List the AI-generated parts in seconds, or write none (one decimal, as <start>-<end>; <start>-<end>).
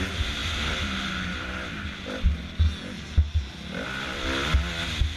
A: none